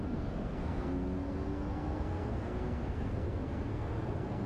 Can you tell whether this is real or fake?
fake